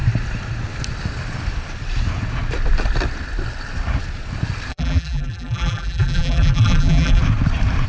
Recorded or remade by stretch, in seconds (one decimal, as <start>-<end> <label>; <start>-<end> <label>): 0.0-4.7 recorded; 4.7-7.2 remade; 7.2-7.9 recorded